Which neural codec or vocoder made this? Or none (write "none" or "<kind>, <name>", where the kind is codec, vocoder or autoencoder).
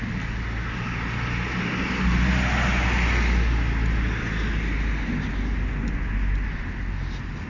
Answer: none